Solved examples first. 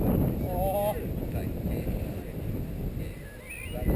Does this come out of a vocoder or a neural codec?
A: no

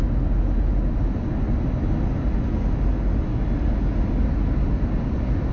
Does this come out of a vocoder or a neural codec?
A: no